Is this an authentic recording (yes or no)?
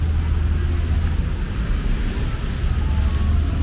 yes